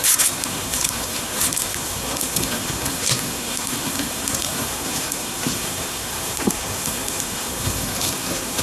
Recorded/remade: remade